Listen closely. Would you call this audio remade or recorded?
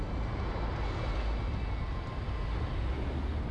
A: recorded